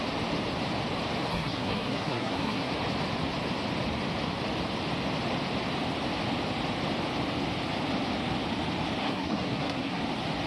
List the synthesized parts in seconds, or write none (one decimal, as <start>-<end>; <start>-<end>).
1.3-2.7; 9.0-10.0